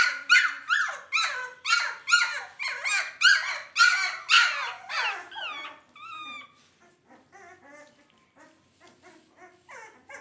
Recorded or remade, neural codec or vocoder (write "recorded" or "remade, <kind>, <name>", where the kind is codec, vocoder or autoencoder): recorded